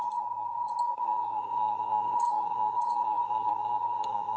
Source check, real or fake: fake